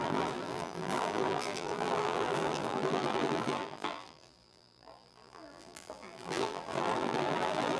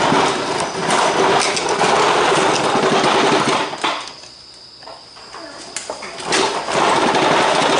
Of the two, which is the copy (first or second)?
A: first